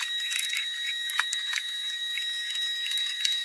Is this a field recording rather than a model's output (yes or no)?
no